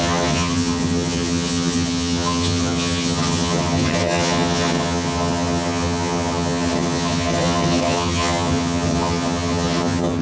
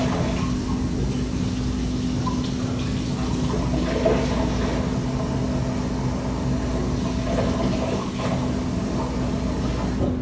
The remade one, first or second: first